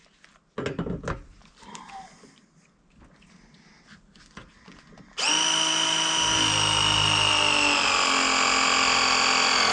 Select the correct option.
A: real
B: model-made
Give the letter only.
A